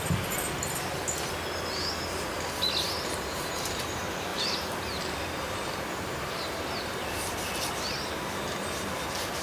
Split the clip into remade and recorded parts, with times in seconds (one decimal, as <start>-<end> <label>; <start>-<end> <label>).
0.0-4.3 recorded; 4.3-4.8 remade; 4.8-9.4 recorded